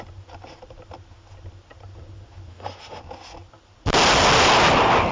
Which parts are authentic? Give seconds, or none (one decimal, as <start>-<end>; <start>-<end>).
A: 0.0-2.5; 3.0-5.1